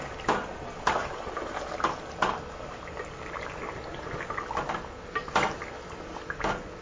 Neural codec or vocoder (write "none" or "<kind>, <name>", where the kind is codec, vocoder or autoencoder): none